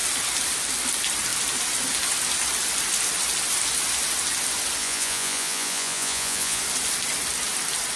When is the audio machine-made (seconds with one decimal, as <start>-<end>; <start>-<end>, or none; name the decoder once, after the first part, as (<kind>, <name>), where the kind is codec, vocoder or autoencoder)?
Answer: 4.8-6.6 (vocoder, Vocos)